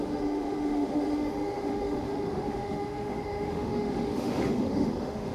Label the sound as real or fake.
fake